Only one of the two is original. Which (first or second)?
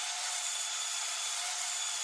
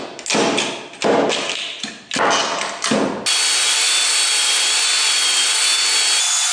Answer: second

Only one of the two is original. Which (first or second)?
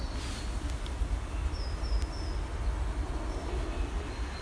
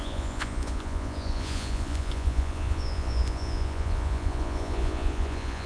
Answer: first